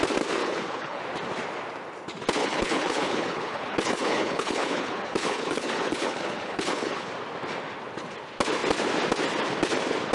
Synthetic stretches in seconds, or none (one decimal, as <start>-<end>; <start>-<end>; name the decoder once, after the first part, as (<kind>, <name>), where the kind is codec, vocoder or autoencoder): 0.4-1.0 (codec, HILCodec); 2.4-7.1